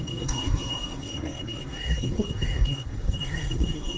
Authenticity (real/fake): fake